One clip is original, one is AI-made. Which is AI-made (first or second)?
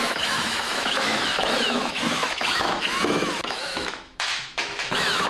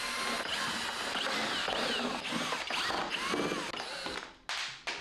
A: first